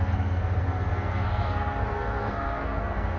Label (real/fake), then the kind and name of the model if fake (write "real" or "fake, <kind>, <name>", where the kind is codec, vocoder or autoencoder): fake, codec, SNAC